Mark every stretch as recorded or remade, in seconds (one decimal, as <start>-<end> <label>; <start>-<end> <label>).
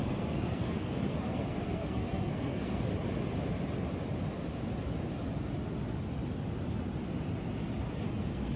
0.0-2.9 remade; 2.9-8.1 recorded; 8.1-8.6 remade